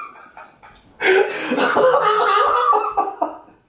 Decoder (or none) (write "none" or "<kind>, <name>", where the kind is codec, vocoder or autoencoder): none